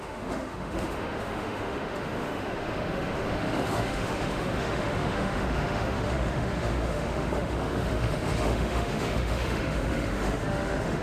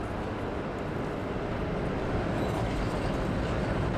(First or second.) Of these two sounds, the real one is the second